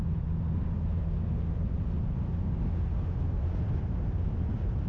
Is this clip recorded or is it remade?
recorded